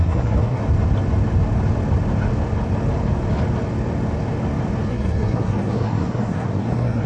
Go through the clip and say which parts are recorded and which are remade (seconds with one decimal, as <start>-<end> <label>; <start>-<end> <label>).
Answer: 0.0-0.6 remade; 0.6-4.9 recorded; 4.9-7.1 remade